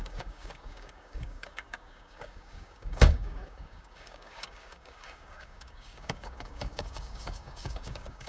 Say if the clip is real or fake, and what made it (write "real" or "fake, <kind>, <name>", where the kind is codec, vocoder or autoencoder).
fake, codec, DAC